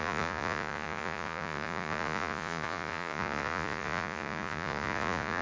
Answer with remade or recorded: remade